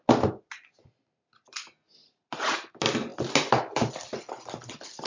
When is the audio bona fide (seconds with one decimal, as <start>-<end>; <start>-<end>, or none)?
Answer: 0.0-2.0; 2.7-3.1; 3.9-5.1